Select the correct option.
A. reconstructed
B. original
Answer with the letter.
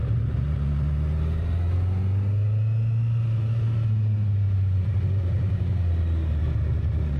B